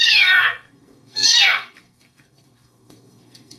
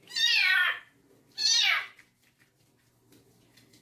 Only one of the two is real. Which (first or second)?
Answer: second